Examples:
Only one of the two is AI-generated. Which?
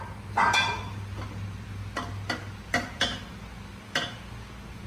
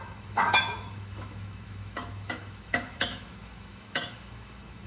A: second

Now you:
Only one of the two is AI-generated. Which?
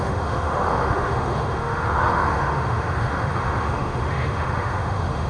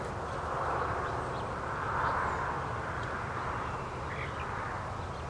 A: first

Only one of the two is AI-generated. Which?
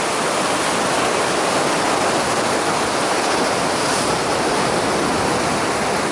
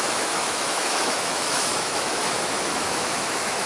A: second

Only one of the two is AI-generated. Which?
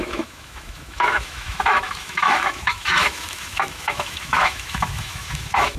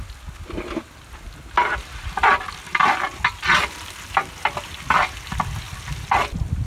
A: first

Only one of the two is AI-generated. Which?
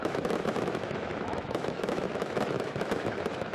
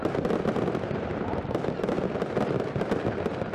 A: first